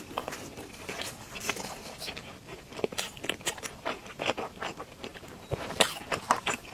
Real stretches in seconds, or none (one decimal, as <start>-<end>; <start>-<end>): 0.0-5.1